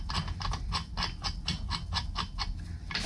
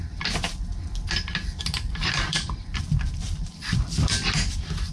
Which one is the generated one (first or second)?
second